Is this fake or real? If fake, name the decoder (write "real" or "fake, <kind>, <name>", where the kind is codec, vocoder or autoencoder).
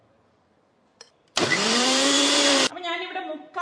fake, vocoder, BigVGAN v2